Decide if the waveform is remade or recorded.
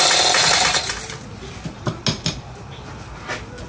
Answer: recorded